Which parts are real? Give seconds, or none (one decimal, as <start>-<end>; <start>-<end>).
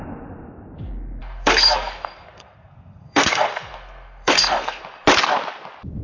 0.0-1.2; 4.8-6.0